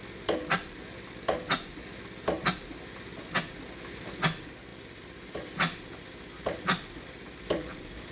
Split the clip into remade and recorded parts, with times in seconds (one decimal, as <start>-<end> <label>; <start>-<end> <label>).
0.0-8.1 recorded